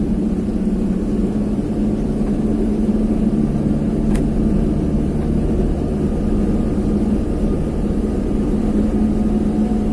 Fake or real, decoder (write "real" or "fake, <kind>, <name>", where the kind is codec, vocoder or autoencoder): real